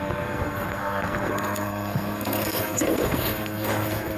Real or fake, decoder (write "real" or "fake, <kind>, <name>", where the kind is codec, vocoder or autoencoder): fake, codec, SNAC